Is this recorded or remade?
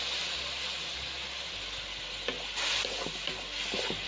recorded